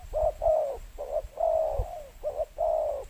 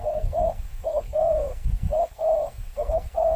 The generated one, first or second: second